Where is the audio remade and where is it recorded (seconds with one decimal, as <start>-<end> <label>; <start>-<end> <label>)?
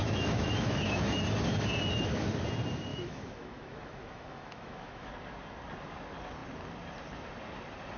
0.0-1.2 remade; 1.2-2.9 recorded; 2.9-5.1 remade; 5.1-8.0 recorded